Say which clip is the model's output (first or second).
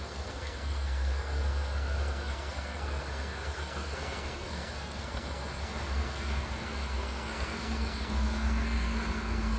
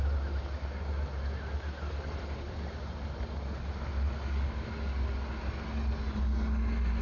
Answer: first